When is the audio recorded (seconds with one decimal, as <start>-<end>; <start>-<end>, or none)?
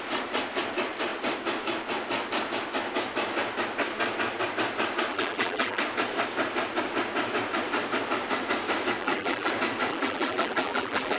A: 0.0-5.1; 5.8-9.0; 9.5-9.9